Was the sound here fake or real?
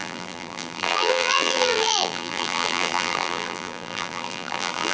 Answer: fake